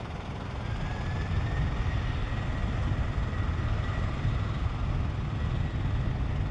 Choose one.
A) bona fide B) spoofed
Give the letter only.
A